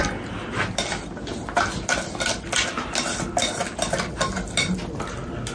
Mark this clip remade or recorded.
recorded